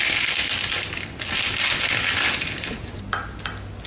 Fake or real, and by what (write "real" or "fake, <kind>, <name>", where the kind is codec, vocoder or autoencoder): real